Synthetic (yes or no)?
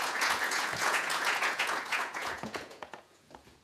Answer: yes